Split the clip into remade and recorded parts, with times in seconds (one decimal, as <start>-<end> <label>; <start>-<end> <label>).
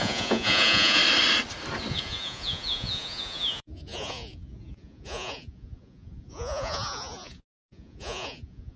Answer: 0.0-1.0 remade; 1.0-1.9 recorded; 1.9-8.8 remade